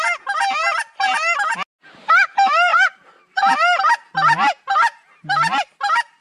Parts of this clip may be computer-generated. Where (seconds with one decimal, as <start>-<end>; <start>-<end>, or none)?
2.7-3.4